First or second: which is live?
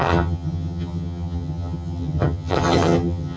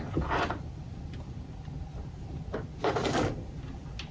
second